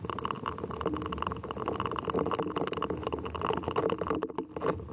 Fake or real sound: real